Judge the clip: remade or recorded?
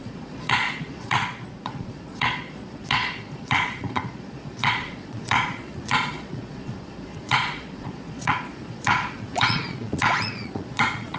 remade